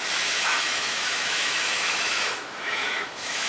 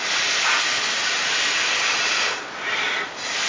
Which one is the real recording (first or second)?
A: second